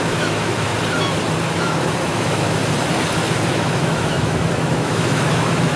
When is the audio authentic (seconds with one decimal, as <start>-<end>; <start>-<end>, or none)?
0.7-1.6; 2.6-3.5